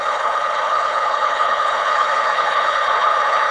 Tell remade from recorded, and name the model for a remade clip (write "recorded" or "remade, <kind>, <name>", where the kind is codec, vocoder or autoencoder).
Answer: remade, codec, HILCodec